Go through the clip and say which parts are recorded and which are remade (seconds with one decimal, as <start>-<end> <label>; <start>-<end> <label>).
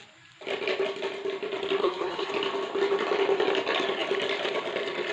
0.0-1.8 recorded; 1.8-2.3 remade; 2.3-5.1 recorded